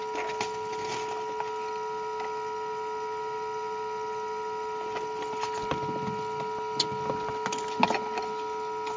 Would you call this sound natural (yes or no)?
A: yes